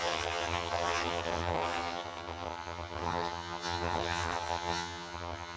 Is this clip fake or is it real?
fake